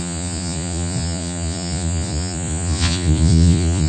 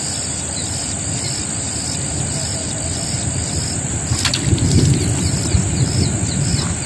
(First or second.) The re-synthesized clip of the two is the first